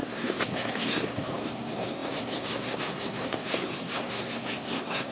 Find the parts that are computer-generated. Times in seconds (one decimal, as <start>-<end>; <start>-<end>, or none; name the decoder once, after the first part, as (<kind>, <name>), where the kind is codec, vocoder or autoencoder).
0.0-5.1 (codec, SNAC)